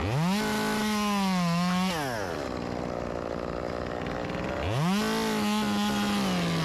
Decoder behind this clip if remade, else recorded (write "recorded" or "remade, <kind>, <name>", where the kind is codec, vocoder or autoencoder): recorded